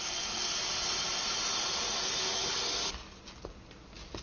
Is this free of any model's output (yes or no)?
yes